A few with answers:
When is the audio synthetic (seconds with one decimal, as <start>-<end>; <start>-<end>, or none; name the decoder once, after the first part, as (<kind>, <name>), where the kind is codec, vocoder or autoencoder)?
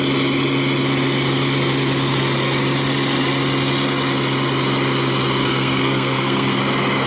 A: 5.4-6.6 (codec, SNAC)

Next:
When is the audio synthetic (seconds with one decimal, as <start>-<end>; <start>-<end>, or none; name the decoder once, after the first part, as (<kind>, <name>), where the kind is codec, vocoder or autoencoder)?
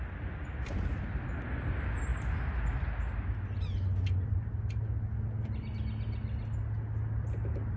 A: none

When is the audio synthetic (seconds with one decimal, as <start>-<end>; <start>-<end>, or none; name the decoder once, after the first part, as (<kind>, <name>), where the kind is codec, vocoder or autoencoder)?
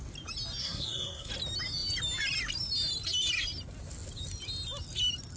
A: 0.6-1.3 (codec, SNAC)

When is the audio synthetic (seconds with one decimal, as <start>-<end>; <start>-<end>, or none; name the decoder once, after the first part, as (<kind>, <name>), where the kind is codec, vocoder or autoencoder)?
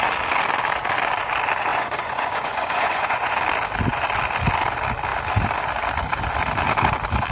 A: 1.7-3.3 (vocoder, Vocos)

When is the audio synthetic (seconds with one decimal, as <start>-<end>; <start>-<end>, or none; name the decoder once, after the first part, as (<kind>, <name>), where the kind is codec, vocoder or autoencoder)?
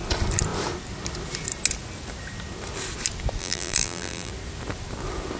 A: 3.4-4.3 (vocoder, BigVGAN v2)